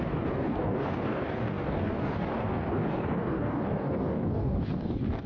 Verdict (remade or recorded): remade